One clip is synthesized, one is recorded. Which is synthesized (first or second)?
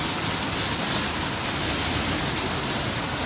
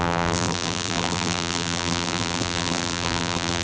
second